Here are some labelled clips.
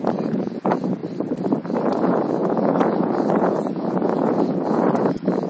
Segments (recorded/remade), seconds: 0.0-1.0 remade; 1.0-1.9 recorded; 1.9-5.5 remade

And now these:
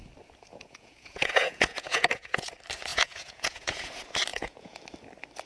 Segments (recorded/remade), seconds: 0.0-0.5 recorded; 0.5-2.5 remade; 2.5-2.9 recorded; 2.9-3.9 remade; 3.9-4.3 recorded; 4.3-4.8 remade; 4.8-5.5 recorded

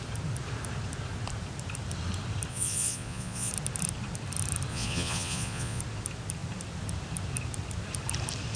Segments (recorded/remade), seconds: 0.0-2.5 recorded; 2.5-3.5 remade; 3.5-4.7 recorded; 4.7-5.8 remade; 5.8-8.6 recorded

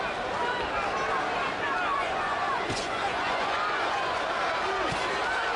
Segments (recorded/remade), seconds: 0.0-1.9 recorded; 1.9-4.2 remade; 4.2-5.6 recorded

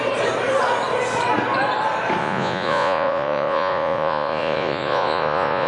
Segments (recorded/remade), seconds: 0.0-2.2 recorded; 2.2-5.7 remade

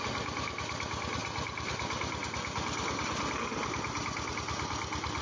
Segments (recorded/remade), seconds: 0.0-5.2 recorded